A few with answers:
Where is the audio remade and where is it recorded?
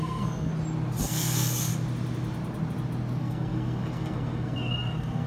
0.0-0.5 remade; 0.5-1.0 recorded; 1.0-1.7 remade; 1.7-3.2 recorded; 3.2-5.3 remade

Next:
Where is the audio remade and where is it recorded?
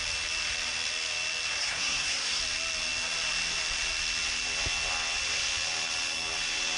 0.0-1.6 recorded; 1.6-2.4 remade; 2.4-6.8 recorded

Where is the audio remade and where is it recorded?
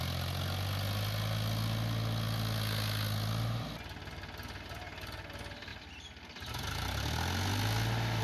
0.0-8.2 recorded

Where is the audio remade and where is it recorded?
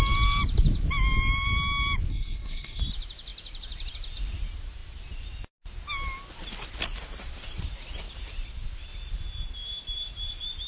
0.0-2.1 recorded; 2.1-2.8 remade; 2.8-10.7 recorded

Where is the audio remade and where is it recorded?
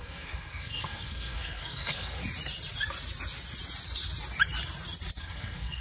0.0-2.2 remade; 2.2-5.2 recorded; 5.2-5.8 remade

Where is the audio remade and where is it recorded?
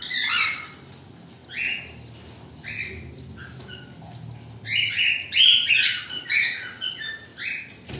0.0-8.0 recorded